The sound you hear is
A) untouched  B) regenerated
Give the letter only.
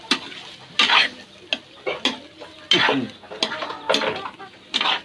A